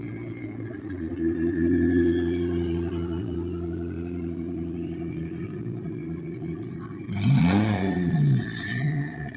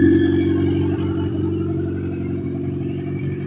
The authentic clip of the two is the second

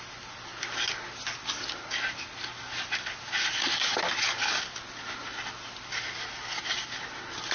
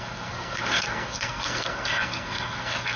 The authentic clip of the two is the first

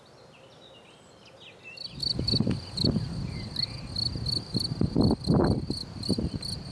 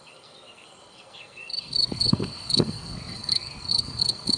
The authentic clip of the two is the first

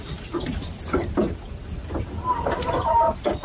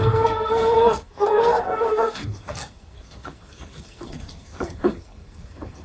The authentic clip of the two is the first